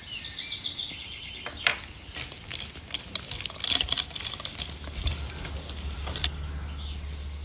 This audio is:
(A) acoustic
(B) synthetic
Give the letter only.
A